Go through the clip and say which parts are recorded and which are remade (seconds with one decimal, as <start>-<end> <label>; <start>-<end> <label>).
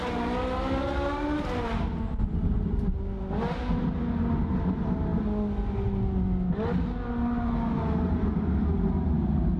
0.0-9.6 recorded